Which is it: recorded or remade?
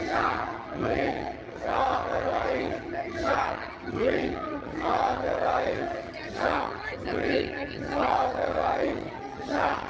remade